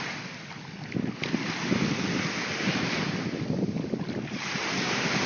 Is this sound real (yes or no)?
yes